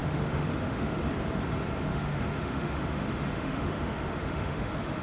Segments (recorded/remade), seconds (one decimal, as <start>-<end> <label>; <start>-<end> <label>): 0.0-1.0 remade; 1.0-1.9 recorded; 1.9-5.0 remade